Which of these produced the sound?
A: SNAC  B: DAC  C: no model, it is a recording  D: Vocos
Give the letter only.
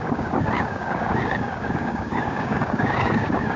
B